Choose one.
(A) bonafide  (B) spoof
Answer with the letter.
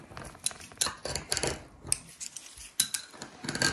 A